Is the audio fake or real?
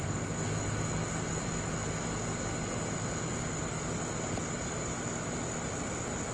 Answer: real